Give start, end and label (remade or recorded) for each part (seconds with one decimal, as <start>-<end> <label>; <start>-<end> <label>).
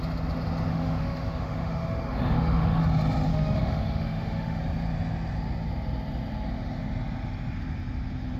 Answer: 0.0-0.7 recorded; 0.7-2.8 remade; 2.8-3.3 recorded; 3.3-4.6 remade; 4.6-8.4 recorded